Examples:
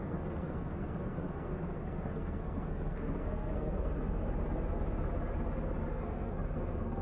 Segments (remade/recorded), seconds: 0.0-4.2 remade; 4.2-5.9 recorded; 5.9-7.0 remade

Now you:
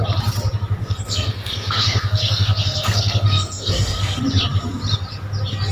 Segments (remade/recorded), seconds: 0.0-0.8 recorded; 0.8-4.2 remade; 4.2-5.7 recorded

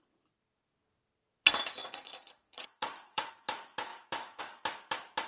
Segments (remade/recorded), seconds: 0.0-1.8 recorded; 1.8-3.3 remade; 3.3-3.9 recorded; 3.9-4.4 remade; 4.4-5.3 recorded